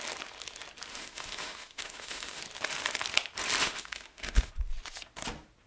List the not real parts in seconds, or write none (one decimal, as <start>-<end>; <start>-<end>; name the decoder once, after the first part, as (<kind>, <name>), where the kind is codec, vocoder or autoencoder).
0.9-2.4 (autoencoder, DAC-VAE); 3.6-4.5